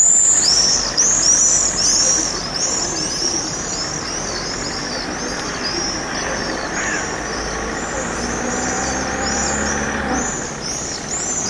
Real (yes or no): yes